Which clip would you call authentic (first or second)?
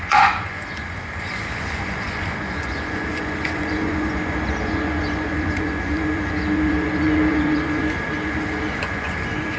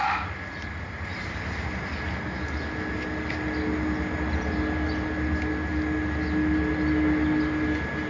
second